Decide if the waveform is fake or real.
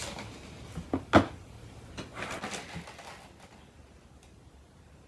real